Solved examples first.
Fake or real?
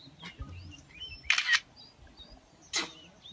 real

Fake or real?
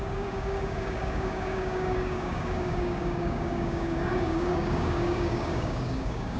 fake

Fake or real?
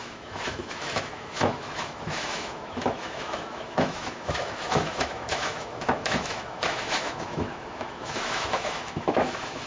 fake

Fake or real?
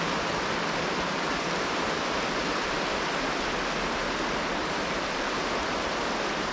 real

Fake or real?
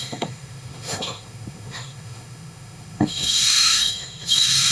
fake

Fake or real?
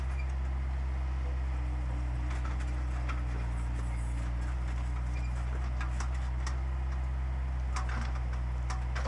real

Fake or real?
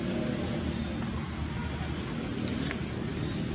real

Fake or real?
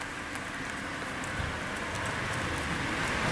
real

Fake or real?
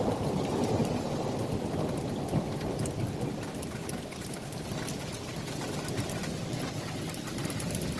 real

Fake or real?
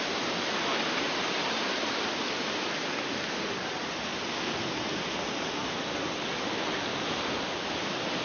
real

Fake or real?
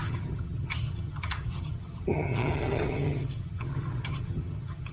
fake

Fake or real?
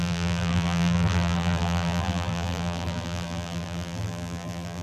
fake